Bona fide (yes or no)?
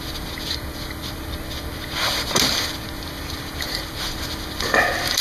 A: yes